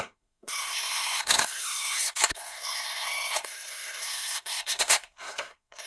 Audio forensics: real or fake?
fake